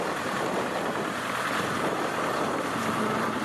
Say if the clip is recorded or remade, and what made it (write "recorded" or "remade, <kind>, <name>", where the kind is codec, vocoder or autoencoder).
recorded